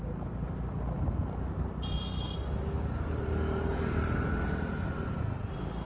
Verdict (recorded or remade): recorded